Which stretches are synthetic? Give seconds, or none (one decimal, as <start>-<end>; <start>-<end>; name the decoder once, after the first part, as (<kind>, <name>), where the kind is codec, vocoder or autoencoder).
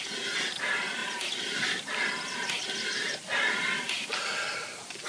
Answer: 1.0-4.1 (vocoder, BigVGAN v2)